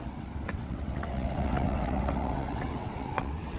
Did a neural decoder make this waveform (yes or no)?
yes